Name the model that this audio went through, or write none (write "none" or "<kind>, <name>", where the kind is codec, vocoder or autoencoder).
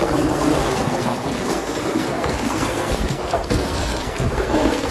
codec, SNAC